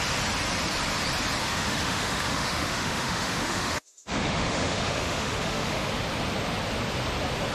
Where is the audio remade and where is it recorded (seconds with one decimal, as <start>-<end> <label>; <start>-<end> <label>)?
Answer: 0.0-1.4 recorded; 1.4-5.9 remade; 5.9-7.5 recorded